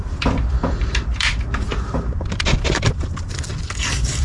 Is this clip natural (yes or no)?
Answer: no